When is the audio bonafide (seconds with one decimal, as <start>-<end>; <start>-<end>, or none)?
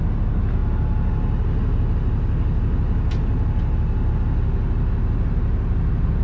0.0-6.2